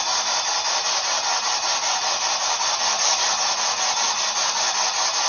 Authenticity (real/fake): real